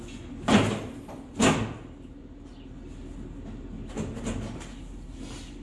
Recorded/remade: recorded